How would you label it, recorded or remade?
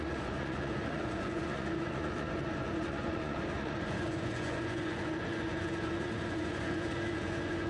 remade